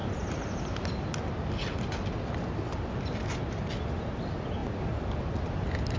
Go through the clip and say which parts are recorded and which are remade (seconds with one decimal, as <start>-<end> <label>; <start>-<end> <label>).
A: 0.0-6.0 recorded